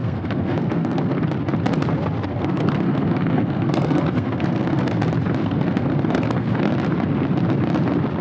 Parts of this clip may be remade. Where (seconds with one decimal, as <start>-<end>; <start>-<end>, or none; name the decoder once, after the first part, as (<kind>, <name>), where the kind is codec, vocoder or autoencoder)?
0.0-1.2 (codec, SNAC); 2.3-5.0; 5.4-6.7